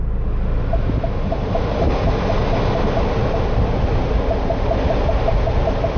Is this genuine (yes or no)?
yes